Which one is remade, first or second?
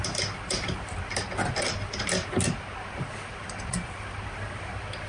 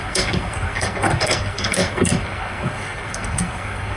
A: second